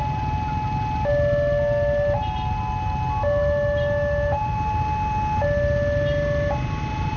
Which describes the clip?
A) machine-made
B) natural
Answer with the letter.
B